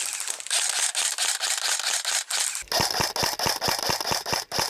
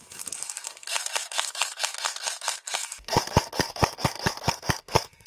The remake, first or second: second